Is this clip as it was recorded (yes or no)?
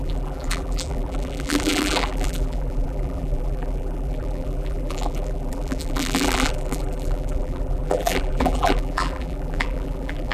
no